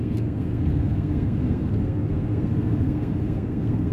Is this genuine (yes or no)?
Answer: no